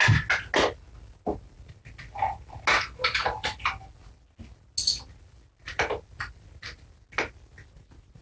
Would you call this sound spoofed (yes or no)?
no